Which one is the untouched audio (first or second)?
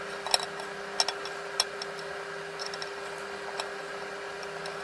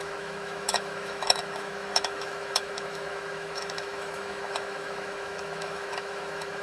first